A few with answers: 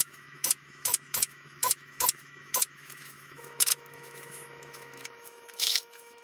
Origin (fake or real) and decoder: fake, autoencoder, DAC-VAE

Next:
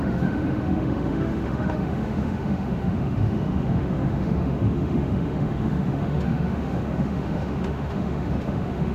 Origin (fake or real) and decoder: fake, autoencoder, DAC-VAE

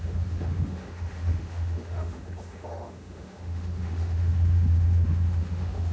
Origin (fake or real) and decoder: fake, autoencoder, DAC-VAE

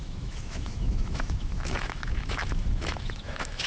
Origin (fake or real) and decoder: fake, autoencoder, DAC-VAE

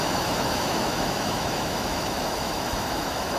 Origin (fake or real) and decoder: fake, autoencoder, DAC-VAE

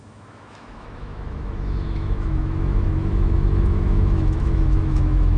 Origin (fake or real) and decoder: fake, autoencoder, DAC-VAE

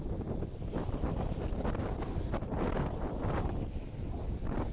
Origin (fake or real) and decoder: real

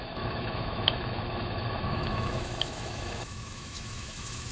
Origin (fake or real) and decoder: fake, autoencoder, DAC-VAE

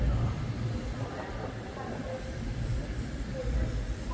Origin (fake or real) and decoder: real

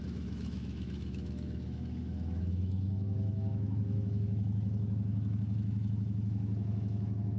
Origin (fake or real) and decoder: fake, autoencoder, DAC-VAE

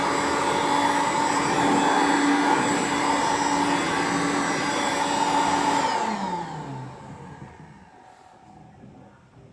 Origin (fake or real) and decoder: real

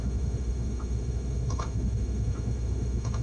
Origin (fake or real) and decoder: fake, autoencoder, DAC-VAE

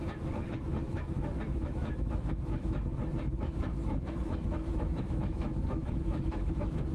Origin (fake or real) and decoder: fake, autoencoder, DAC-VAE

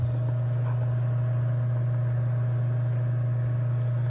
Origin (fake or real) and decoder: real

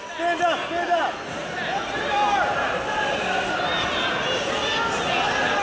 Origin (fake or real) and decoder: real